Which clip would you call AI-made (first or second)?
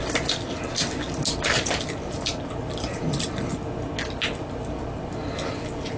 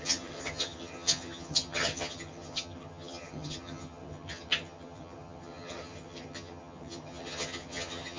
second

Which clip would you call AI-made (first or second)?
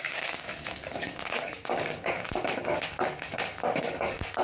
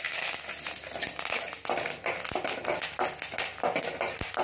first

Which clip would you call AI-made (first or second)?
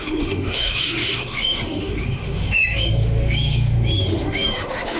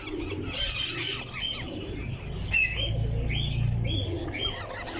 first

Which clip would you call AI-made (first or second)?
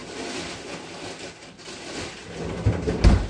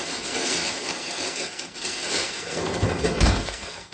second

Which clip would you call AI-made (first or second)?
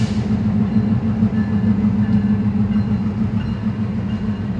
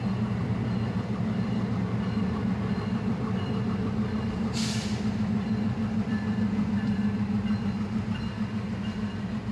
second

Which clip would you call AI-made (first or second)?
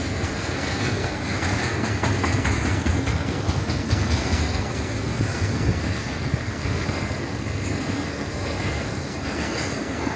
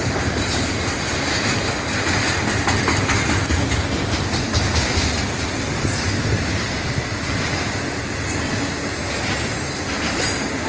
first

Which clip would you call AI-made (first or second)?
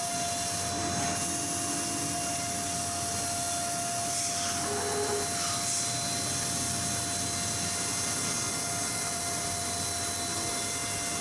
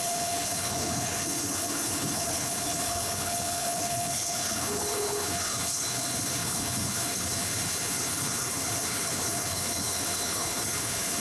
second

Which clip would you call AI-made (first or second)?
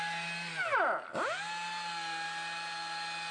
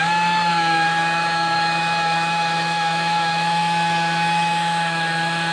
second